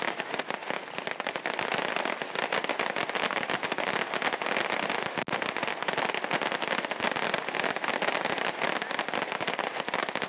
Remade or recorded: recorded